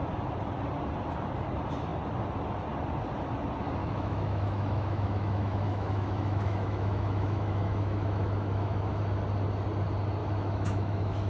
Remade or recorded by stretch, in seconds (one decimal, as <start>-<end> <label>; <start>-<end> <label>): 0.0-3.8 recorded; 3.8-9.0 remade; 9.0-10.2 recorded; 10.2-11.3 remade